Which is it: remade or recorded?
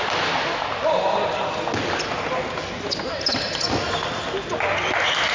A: recorded